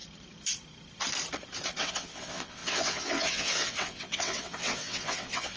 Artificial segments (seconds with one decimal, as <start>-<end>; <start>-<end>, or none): 1.8-5.6